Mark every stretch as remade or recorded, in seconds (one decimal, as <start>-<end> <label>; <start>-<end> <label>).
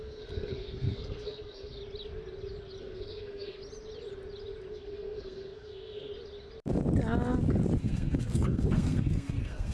0.0-1.8 remade; 1.8-2.8 recorded; 2.8-3.6 remade; 3.6-4.7 recorded; 4.7-6.1 remade; 6.1-7.8 recorded; 7.8-9.7 remade